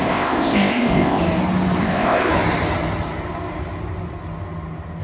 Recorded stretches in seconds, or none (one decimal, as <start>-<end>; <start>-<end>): 1.2-1.8; 2.3-5.0

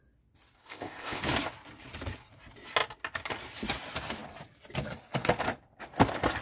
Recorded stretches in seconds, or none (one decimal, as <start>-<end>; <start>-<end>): 0.0-0.6; 1.2-6.4